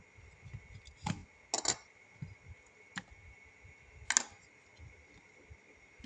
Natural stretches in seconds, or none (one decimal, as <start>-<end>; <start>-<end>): 0.0-4.7; 5.2-6.1